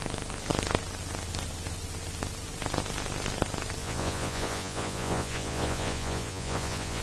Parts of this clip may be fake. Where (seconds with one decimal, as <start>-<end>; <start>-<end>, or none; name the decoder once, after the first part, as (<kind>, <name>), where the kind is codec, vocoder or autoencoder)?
3.8-7.0 (vocoder, Vocos)